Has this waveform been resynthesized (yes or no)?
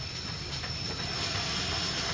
no